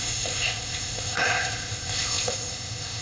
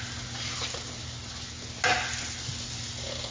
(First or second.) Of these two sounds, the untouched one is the second